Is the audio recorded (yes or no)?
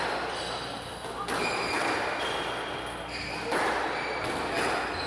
yes